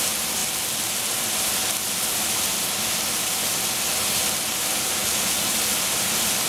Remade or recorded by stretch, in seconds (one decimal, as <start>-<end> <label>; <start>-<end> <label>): 0.0-6.5 recorded